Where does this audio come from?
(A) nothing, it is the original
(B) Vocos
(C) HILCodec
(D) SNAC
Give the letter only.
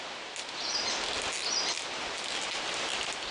A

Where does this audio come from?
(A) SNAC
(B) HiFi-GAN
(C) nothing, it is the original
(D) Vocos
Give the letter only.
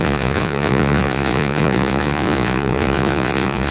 D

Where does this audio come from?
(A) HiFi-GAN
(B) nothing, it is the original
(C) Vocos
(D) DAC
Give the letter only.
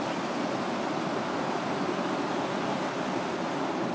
B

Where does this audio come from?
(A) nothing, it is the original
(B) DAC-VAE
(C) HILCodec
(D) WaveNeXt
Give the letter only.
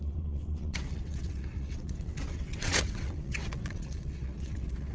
D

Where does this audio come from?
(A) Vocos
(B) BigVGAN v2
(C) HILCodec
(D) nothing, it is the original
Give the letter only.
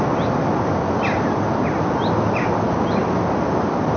D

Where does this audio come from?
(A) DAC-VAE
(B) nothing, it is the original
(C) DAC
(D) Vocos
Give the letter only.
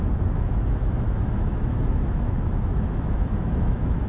A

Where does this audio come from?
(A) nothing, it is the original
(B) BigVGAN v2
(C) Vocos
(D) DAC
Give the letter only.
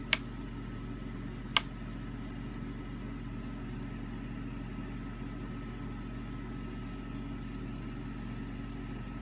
A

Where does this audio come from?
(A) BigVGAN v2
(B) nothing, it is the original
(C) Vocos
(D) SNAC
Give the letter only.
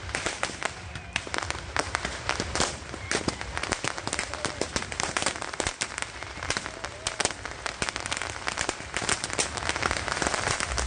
B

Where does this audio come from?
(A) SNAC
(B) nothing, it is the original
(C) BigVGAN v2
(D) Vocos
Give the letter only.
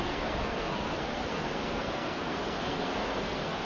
A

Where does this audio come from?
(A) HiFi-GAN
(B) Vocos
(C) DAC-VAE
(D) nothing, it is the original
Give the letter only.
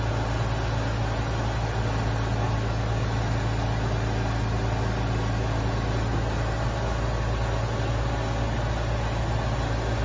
D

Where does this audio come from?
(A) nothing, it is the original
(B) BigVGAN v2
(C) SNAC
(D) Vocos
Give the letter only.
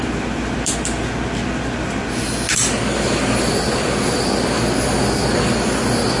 A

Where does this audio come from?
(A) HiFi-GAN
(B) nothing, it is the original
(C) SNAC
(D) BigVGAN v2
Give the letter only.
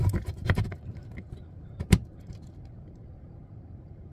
D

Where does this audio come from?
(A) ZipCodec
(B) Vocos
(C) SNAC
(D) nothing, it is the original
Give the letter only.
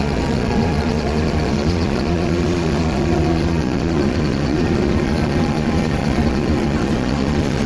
B